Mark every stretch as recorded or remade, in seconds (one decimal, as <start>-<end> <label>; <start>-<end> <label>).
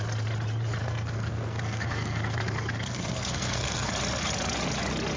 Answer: 0.0-0.8 recorded; 0.8-3.9 remade; 3.9-5.2 recorded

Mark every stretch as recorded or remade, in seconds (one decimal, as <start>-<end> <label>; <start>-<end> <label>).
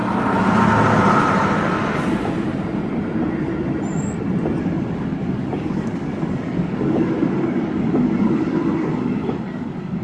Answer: 0.0-4.6 recorded; 4.6-10.0 remade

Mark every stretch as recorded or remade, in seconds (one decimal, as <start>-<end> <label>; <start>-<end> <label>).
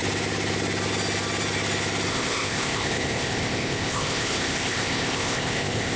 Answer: 0.0-2.1 recorded; 2.1-6.0 remade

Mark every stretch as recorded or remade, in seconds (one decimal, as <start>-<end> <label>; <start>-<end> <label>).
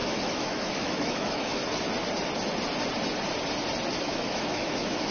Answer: 0.0-1.6 remade; 1.6-4.0 recorded; 4.0-5.1 remade